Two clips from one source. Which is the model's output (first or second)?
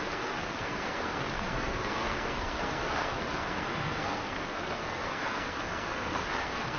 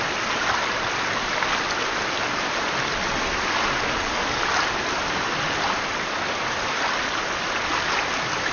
first